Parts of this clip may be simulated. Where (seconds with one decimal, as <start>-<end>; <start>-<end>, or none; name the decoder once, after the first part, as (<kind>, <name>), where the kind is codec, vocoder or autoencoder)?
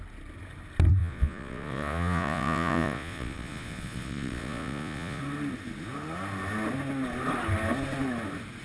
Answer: 1.0-5.2 (vocoder, Vocos)